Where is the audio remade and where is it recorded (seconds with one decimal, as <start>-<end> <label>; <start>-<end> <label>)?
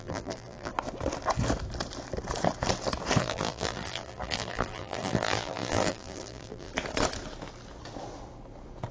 0.0-0.7 remade; 0.7-3.2 recorded; 3.2-6.7 remade; 6.7-8.9 recorded